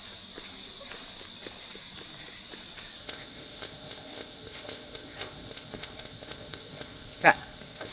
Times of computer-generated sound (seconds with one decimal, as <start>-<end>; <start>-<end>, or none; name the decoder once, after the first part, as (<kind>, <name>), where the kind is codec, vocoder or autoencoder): 3.0-7.9 (codec, ZipCodec)